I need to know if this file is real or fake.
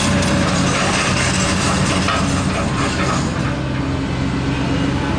real